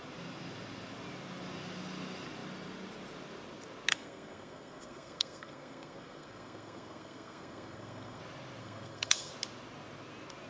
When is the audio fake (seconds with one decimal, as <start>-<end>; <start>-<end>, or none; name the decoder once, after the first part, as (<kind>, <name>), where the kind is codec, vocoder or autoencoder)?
3.9-8.2 (codec, SNAC); 8.6-9.3